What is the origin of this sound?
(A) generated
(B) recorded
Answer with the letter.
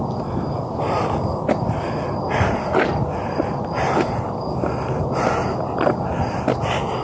B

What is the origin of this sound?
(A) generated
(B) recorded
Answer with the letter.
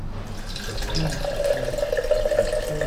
B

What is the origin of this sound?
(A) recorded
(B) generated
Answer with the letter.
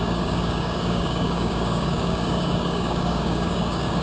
B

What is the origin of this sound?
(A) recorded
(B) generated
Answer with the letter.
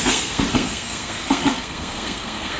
B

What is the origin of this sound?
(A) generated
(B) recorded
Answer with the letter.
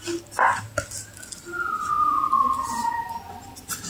B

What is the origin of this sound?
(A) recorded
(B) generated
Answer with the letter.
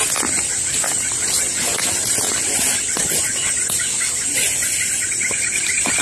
A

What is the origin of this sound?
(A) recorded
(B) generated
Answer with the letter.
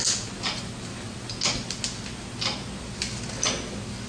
A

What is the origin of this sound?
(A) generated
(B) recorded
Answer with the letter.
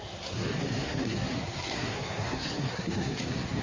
A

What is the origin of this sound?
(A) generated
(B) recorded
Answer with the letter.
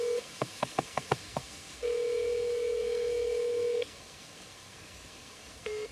A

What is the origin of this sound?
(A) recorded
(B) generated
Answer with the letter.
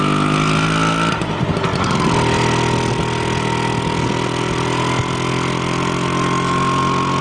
A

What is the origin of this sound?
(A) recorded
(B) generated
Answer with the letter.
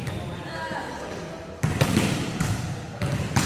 A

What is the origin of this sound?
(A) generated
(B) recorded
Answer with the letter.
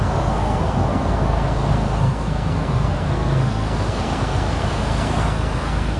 A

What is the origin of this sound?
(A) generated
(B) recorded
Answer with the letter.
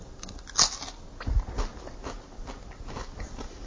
B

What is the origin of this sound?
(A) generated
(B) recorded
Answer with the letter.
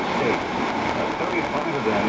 B